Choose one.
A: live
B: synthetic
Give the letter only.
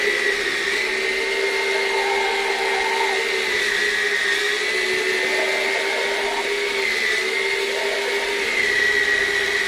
A